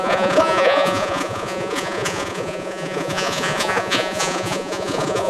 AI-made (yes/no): yes